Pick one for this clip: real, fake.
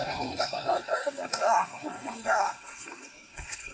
fake